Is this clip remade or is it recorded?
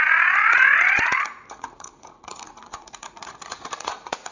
remade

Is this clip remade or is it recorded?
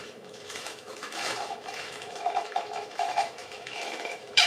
remade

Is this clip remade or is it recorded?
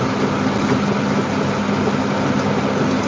recorded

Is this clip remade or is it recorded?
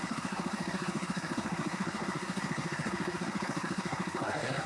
remade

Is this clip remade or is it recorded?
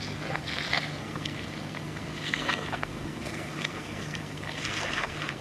remade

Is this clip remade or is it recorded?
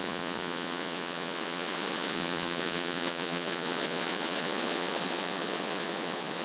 remade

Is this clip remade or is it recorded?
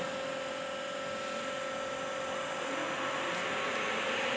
recorded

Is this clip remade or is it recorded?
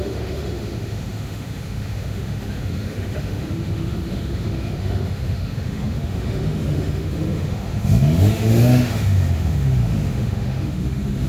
remade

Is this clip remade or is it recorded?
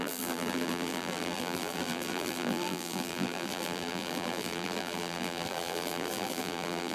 remade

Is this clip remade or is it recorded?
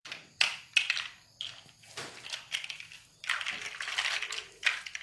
recorded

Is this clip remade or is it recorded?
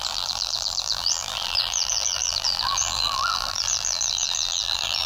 remade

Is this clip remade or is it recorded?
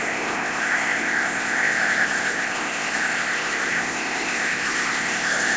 remade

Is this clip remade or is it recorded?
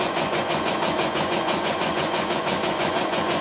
remade